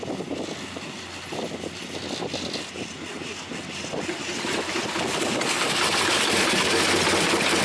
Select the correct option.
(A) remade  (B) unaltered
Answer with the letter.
B